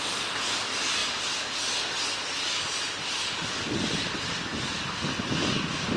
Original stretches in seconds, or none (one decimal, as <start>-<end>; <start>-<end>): 0.0-6.0